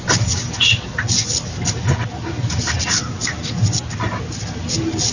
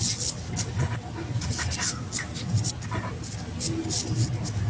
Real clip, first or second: second